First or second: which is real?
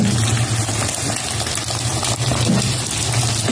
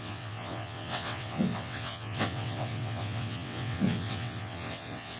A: first